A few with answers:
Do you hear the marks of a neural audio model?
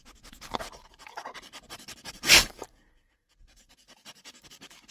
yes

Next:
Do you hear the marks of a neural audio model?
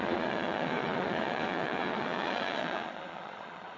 yes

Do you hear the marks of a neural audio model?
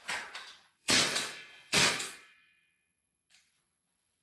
yes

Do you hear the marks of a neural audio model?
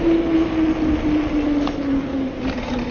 no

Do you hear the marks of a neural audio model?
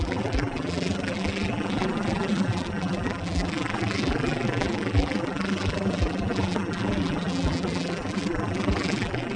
yes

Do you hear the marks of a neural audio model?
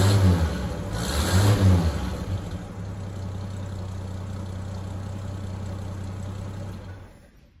no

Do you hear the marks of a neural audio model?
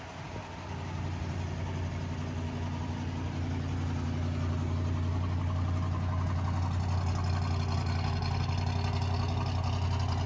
no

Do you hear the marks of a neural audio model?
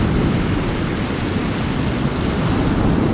no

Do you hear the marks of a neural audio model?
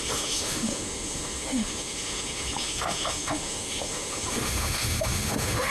yes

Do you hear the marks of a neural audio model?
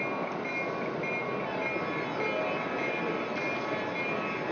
no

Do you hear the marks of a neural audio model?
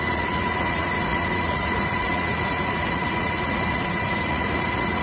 yes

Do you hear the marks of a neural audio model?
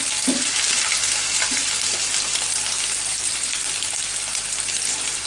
yes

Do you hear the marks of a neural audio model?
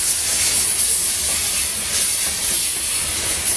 no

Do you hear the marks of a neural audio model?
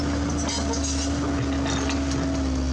no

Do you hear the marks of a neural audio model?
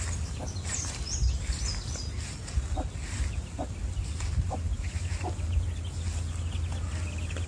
no